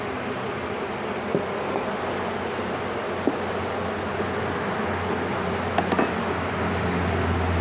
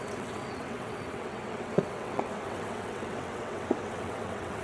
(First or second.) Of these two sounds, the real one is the first